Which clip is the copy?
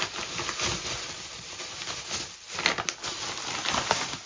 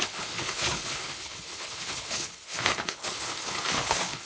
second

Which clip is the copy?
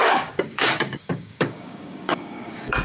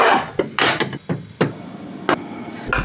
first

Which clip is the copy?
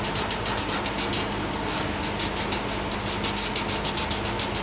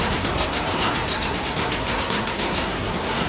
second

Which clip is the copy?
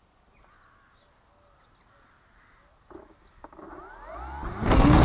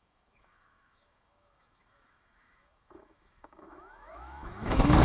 second